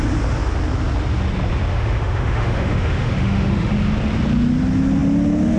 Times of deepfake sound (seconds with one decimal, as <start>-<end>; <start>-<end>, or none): 1.7-3.7